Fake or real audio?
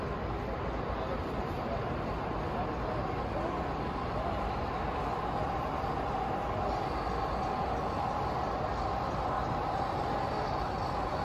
real